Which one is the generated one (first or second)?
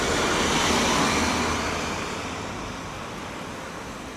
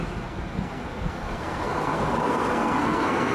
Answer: second